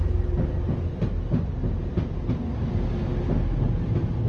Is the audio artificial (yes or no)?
no